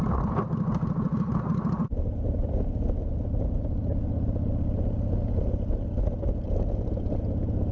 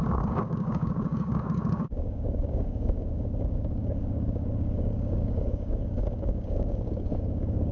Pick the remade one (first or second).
second